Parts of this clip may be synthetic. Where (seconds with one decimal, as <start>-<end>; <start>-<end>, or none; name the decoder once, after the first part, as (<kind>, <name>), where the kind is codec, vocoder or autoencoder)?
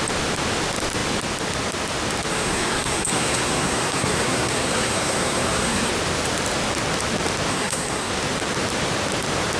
2.3-5.9 (codec, SNAC); 7.5-8.1